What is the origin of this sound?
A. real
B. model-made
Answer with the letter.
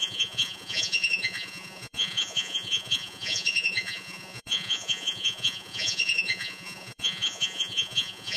B